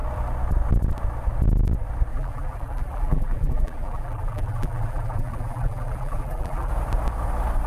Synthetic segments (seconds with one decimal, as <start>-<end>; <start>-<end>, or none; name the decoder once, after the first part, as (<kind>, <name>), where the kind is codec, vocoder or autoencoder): 2.1-6.7 (vocoder, BigVGAN v2)